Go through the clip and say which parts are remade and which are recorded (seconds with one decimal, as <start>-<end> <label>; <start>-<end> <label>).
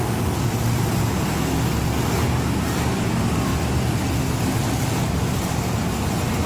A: 0.0-6.5 recorded